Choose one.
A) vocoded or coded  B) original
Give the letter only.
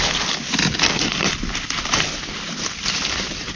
B